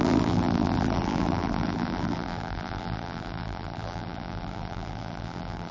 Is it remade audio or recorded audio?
remade